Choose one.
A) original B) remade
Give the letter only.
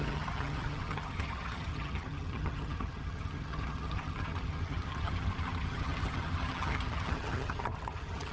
B